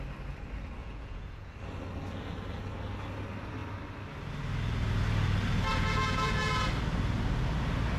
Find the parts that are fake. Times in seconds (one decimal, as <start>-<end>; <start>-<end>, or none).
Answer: 0.8-1.5; 5.7-6.7